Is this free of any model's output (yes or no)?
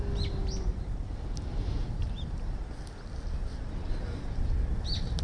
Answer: yes